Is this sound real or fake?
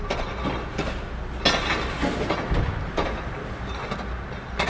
real